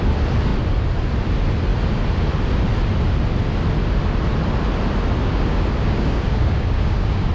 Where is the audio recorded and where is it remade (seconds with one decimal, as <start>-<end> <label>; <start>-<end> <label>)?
0.0-5.2 recorded; 5.2-7.3 remade